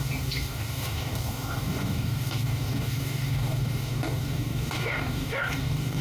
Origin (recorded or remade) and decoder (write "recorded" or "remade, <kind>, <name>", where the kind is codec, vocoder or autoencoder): remade, codec, DAC